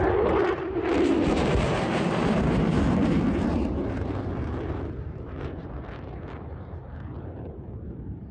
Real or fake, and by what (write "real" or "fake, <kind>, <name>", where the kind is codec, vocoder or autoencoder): fake, vocoder, BigVGAN v2